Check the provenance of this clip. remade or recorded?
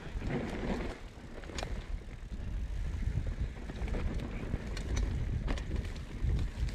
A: recorded